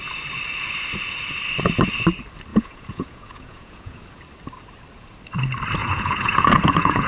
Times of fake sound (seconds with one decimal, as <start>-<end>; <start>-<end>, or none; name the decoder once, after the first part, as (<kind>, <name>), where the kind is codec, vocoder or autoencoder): 2.5-4.2 (vocoder, Vocos); 5.8-7.1